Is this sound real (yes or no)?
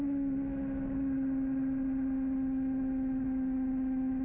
yes